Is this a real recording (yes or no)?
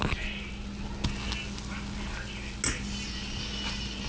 yes